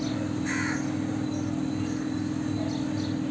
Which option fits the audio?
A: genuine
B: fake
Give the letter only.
A